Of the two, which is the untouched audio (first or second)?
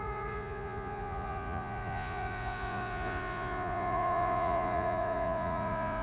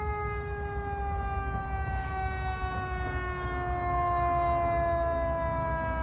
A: second